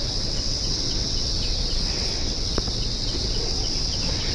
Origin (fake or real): fake